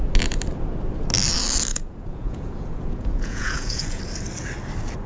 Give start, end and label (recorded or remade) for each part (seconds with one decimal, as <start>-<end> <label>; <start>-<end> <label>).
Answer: 0.0-1.7 recorded; 1.7-4.0 remade; 4.0-5.1 recorded